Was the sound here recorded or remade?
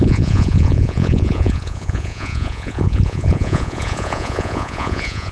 remade